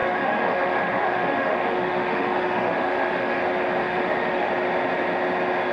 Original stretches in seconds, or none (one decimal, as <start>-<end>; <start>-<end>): 3.4-3.8; 4.5-5.7